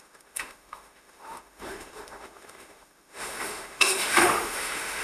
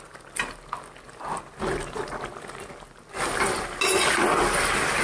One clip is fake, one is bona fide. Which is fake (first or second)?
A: first